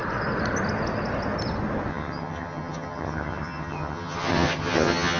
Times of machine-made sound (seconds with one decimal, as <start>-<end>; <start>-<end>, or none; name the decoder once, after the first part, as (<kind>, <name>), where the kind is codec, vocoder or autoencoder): 1.9-5.2 (vocoder, HiFi-GAN)

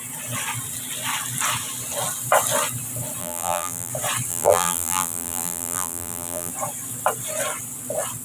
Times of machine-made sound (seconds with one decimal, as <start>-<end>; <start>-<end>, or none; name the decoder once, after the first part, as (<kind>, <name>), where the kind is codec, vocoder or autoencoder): 3.2-3.9 (vocoder, BigVGAN v2); 4.3-6.5

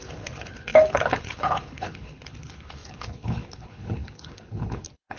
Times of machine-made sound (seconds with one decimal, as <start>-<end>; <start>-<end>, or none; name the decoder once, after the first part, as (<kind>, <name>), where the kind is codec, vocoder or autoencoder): 0.0-5.2 (codec, HILCodec)

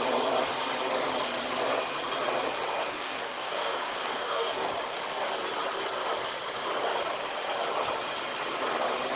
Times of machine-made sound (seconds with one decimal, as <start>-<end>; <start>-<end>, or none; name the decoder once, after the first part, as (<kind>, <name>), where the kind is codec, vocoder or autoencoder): 2.8-4.7 (codec, DAC)